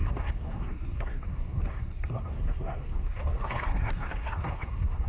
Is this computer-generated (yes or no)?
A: yes